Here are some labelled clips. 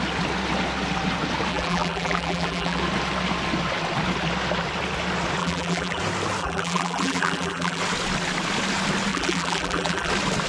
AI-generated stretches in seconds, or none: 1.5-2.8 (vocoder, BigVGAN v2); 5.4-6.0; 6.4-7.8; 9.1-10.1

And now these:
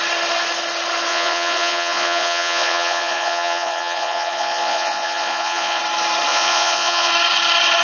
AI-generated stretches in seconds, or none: 1.1-5.8 (vocoder, Vocos); 6.3-7.1